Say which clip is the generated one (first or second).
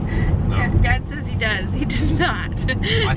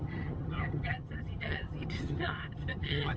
second